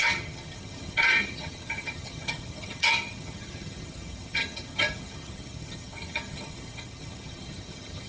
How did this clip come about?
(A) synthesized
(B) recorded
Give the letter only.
A